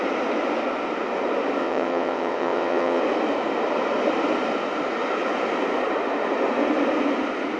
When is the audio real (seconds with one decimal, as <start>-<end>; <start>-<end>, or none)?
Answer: 0.0-1.6; 3.0-7.6